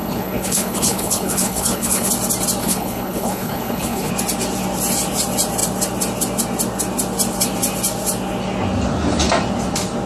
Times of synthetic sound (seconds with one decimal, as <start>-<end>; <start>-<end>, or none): 0.0-2.1; 2.6-4.1